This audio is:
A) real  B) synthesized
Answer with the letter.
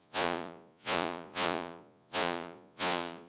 B